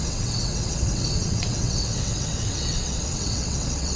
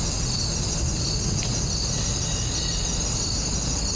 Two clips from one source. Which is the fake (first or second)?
first